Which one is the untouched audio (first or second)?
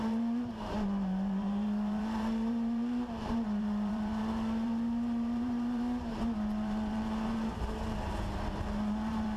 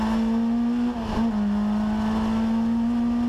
second